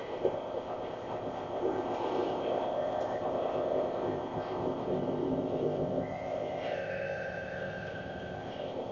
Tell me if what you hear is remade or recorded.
remade